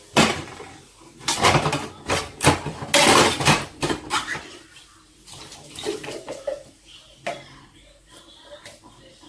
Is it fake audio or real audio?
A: real